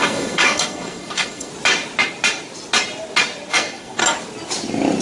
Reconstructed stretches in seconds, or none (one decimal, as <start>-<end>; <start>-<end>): 0.0-1.5; 3.5-4.0